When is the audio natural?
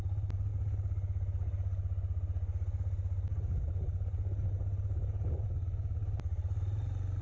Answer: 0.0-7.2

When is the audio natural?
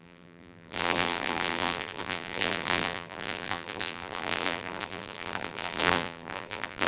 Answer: none